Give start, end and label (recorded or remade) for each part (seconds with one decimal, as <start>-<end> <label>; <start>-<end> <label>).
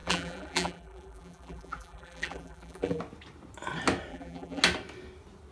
0.0-3.0 remade; 3.0-4.1 recorded; 4.1-4.6 remade; 4.6-5.5 recorded